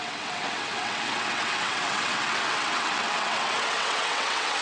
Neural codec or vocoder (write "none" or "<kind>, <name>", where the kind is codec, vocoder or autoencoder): vocoder, WaveNeXt